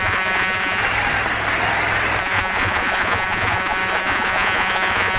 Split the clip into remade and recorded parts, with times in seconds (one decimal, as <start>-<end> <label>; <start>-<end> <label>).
0.0-0.8 remade; 0.8-2.2 recorded; 2.2-5.2 remade